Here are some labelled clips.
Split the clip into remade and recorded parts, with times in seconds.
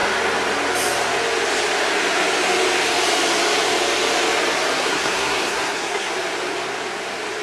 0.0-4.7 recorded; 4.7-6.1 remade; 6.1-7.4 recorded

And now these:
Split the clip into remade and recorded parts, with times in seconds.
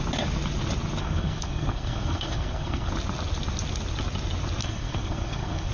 0.0-1.0 recorded; 1.0-2.9 remade; 2.9-4.6 recorded; 4.6-5.7 remade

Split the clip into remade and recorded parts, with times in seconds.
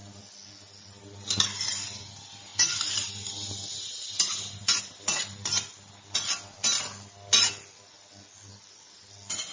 0.0-9.5 recorded